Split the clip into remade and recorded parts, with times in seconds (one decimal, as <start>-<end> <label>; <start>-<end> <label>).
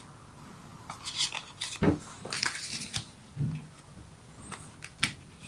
0.0-3.6 recorded; 3.6-4.4 remade; 4.4-5.5 recorded